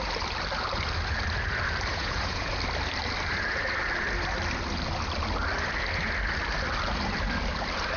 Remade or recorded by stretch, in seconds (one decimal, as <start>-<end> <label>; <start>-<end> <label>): 0.0-1.9 recorded; 1.9-2.5 remade; 2.5-8.0 recorded